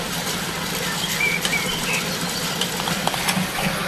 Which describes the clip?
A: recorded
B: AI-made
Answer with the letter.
A